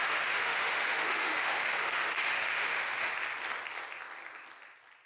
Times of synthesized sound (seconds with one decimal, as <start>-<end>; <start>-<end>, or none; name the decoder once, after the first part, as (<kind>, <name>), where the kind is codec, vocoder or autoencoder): 0.0-3.1 (autoencoder, DAC-VAE)